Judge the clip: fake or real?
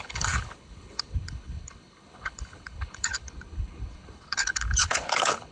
fake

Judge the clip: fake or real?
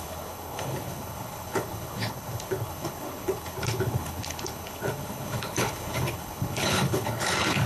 fake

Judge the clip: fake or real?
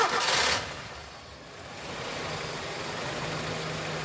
real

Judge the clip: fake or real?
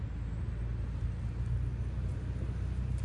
real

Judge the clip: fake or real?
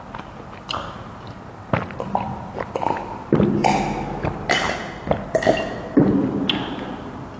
real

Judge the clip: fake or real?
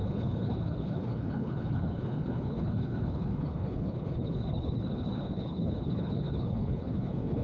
fake